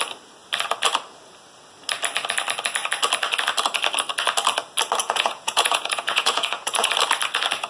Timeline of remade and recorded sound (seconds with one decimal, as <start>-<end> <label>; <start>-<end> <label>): 0.0-5.0 recorded; 5.0-6.9 remade; 6.9-7.7 recorded